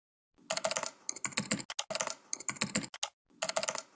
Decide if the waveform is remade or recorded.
recorded